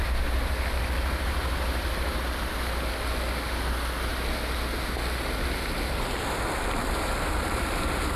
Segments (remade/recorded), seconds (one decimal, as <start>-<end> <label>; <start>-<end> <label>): 0.0-8.2 recorded